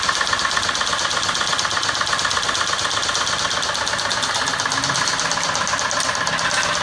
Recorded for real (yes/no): yes